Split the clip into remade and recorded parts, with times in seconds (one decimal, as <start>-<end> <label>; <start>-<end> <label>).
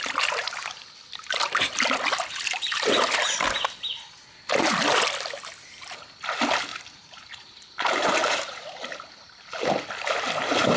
0.0-6.7 recorded; 6.7-9.9 remade; 9.9-10.8 recorded